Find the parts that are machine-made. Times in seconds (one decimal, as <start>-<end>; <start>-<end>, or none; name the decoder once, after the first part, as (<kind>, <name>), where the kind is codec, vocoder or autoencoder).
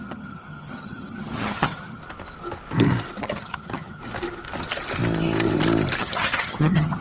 0.0-2.0 (vocoder, HiFi-GAN); 3.2-4.0; 6.0-7.0